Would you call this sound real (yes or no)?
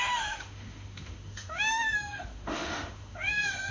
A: no